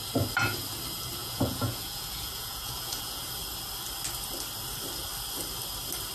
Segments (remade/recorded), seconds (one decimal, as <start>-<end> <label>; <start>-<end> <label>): 0.0-1.2 recorded; 1.2-3.2 remade; 3.2-6.1 recorded